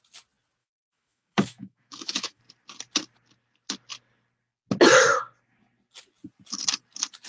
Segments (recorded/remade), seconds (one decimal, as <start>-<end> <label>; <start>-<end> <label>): 0.0-0.6 recorded; 0.6-2.4 remade; 2.4-7.3 recorded